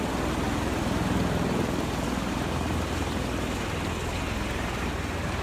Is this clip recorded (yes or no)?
yes